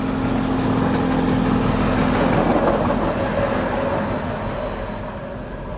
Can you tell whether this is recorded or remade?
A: recorded